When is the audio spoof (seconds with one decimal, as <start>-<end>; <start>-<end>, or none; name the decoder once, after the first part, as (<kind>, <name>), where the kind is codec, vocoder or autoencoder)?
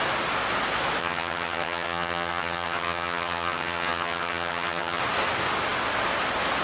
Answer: 1.0-5.0 (vocoder, HiFi-GAN)